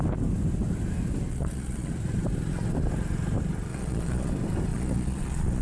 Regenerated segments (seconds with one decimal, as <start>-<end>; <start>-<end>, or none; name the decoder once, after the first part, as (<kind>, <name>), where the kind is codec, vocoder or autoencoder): 1.3-1.9 (vocoder, Vocos); 3.7-4.3; 4.7-5.6